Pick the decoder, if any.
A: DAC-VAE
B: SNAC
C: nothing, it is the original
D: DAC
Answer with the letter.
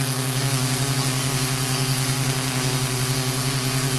B